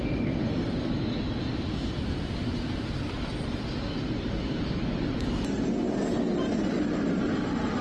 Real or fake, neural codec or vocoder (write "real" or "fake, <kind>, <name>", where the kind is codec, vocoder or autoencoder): real